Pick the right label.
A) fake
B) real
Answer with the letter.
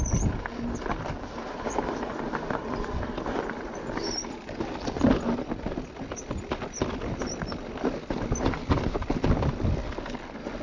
B